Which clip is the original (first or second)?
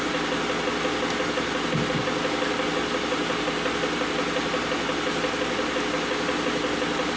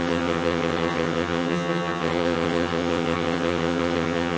first